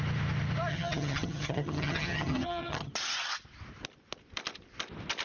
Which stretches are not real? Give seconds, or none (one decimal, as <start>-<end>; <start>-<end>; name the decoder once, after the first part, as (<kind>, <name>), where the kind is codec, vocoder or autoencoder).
0.7-2.9 (vocoder, HiFi-GAN)